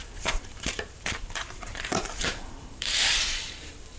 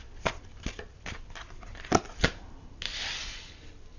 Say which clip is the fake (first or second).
first